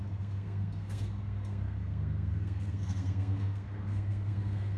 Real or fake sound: fake